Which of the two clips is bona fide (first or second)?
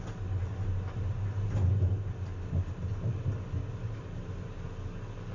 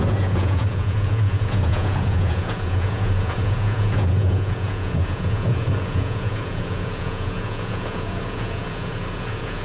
first